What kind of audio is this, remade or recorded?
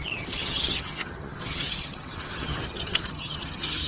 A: remade